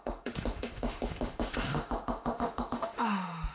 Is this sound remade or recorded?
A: remade